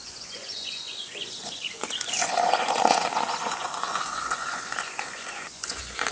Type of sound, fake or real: fake